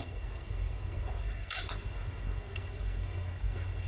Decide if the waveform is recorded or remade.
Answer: remade